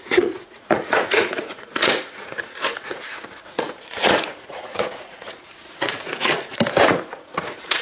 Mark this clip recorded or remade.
remade